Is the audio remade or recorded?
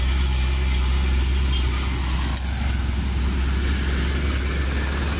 recorded